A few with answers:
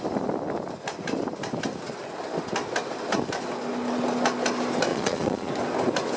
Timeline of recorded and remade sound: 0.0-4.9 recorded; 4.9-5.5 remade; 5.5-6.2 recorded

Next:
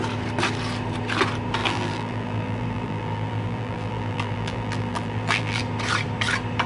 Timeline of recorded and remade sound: 0.0-1.6 recorded; 1.6-5.6 remade; 5.6-6.7 recorded

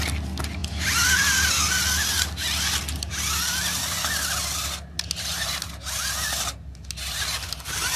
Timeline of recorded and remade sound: 0.0-8.0 recorded